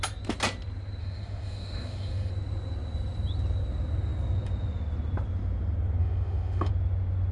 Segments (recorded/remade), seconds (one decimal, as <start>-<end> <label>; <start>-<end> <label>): 0.0-1.0 recorded; 1.0-2.3 remade; 2.3-6.0 recorded; 6.0-6.7 remade; 6.7-7.3 recorded